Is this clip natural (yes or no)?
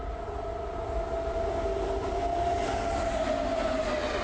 yes